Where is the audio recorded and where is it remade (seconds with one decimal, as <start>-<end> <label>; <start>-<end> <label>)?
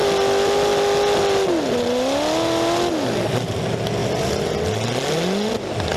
0.0-6.0 recorded